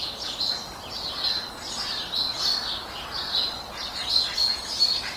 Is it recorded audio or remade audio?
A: recorded